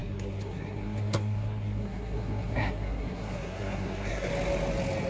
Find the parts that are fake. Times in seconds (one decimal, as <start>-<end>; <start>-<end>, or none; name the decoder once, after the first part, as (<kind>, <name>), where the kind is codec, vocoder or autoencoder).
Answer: 0.0-4.3 (codec, SNAC)